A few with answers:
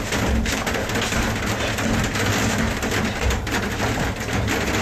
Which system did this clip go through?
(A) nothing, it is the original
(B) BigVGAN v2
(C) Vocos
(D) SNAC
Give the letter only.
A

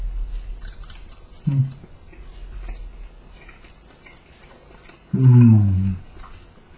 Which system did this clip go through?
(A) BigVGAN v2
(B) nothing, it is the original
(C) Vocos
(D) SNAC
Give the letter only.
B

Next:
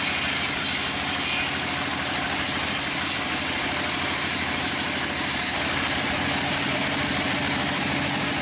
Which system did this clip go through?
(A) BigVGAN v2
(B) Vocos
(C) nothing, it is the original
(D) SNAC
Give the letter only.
A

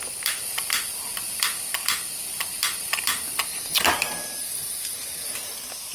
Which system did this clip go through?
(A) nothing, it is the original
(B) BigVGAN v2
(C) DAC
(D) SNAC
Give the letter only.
A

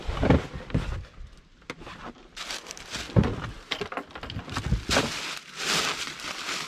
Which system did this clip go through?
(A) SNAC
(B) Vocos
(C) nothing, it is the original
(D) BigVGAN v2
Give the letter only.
C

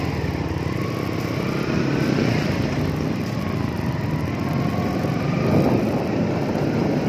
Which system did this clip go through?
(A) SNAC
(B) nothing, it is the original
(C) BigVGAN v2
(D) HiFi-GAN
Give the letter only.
B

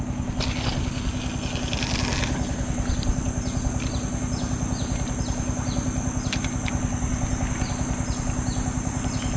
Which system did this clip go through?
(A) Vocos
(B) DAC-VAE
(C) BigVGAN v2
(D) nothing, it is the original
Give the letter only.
D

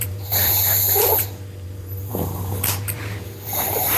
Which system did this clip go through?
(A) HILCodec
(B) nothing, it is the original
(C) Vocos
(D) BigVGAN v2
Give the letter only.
D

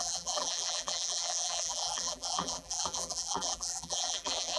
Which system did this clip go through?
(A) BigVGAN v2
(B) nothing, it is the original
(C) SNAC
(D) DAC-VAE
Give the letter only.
A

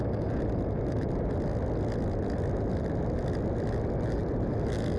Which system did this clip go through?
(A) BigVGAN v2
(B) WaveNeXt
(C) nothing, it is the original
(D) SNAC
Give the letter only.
C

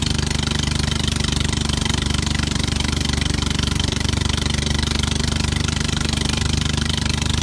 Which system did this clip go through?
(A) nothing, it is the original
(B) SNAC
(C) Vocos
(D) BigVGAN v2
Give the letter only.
D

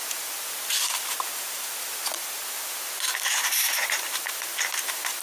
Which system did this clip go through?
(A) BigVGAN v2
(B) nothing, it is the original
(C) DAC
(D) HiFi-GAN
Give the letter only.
A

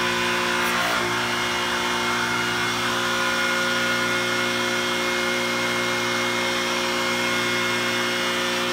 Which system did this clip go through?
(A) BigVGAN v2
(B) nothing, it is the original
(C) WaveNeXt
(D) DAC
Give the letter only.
B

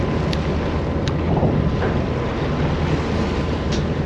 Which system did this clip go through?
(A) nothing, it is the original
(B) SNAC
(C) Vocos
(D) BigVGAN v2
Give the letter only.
A